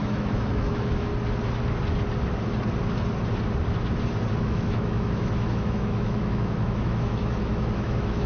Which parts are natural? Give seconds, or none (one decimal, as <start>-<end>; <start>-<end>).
1.1-4.4